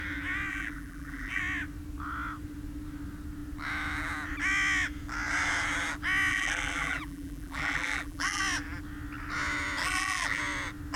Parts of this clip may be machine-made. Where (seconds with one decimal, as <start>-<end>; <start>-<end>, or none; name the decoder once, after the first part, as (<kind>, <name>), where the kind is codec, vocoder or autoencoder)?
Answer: 0.5-1.4 (vocoder, BigVGAN v2); 6.3-8.4; 9.8-10.4